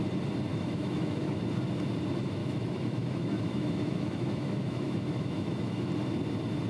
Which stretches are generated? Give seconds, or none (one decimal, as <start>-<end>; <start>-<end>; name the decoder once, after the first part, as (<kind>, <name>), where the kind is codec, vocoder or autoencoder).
0.5-1.4 (autoencoder, DAC-VAE); 2.4-5.9